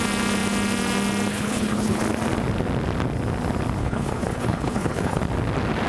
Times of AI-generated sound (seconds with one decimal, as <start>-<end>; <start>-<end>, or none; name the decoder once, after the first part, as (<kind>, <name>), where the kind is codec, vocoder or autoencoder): 1.3-2.0 (codec, HILCodec); 3.8-5.2